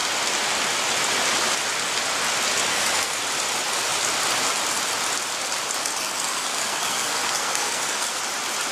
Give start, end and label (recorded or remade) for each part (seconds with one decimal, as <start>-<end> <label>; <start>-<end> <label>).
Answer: 0.0-2.7 recorded; 2.7-3.2 remade; 3.2-5.8 recorded; 5.8-8.2 remade; 8.2-8.7 recorded